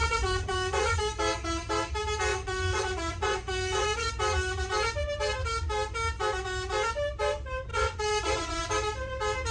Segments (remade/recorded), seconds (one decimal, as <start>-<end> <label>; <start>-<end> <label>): 0.0-1.0 remade; 1.0-2.3 recorded; 2.3-4.1 remade; 4.1-7.7 recorded; 7.7-8.6 remade; 8.6-9.5 recorded